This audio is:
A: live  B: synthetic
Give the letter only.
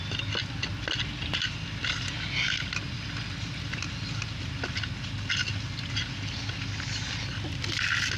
A